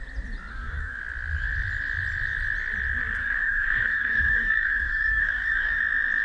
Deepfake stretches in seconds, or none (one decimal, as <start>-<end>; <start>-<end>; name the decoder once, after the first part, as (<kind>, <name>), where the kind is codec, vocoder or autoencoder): 0.5-1.0 (codec, DAC); 3.2-5.8